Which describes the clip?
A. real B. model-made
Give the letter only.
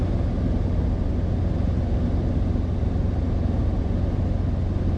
A